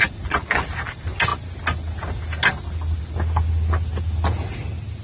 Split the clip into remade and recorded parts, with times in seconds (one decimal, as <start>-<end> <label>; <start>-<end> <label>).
0.0-5.0 recorded